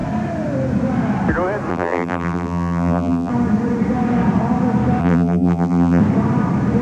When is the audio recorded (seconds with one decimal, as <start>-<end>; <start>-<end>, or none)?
0.0-1.7; 3.3-5.0; 6.0-6.8

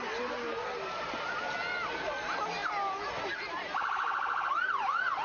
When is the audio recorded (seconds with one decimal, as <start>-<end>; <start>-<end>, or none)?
0.0-5.2

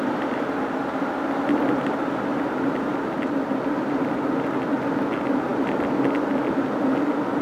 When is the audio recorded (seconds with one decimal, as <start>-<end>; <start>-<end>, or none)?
0.0-7.4

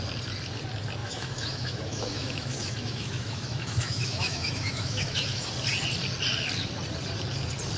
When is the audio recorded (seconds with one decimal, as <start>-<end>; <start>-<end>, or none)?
0.0-1.0; 5.5-7.8

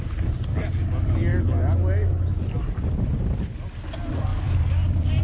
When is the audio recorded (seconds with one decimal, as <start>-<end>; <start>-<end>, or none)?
0.0-4.3

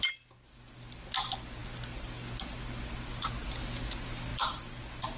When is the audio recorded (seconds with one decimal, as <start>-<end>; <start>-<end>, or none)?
0.0-4.3; 4.8-5.2